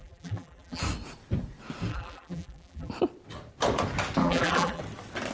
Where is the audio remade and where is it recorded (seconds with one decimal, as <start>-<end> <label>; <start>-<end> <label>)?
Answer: 0.0-0.8 remade; 0.8-1.9 recorded; 1.9-2.9 remade; 2.9-4.2 recorded; 4.2-4.8 remade; 4.8-5.3 recorded